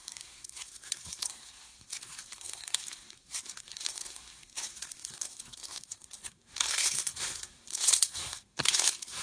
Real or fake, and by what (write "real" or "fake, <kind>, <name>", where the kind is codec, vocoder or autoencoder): fake, codec, SNAC